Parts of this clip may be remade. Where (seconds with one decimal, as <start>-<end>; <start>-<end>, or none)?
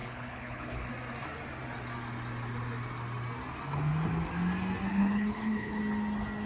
0.0-0.9; 4.9-5.8